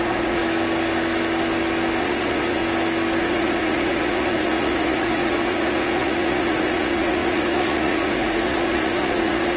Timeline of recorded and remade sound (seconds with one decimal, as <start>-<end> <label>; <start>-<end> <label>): 0.0-0.4 remade; 0.4-2.0 recorded; 2.0-2.6 remade; 2.6-3.2 recorded; 3.2-9.6 remade